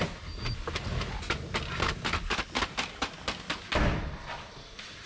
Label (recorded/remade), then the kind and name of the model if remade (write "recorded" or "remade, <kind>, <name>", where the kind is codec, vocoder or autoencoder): recorded